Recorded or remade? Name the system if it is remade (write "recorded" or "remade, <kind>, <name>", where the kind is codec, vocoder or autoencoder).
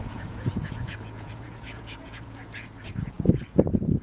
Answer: remade, vocoder, Vocos